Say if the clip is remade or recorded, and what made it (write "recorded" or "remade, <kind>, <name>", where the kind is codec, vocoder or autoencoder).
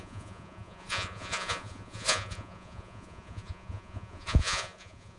remade, vocoder, Vocos